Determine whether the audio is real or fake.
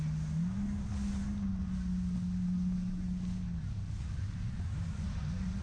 real